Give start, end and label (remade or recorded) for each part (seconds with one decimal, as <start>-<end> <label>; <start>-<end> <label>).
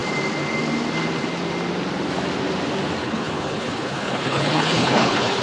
0.0-3.0 recorded; 3.0-5.4 remade